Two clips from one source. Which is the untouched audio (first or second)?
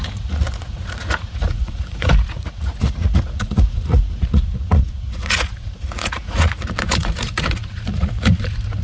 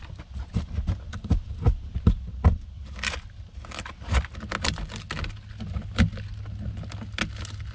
second